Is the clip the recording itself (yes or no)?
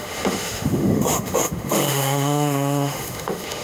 no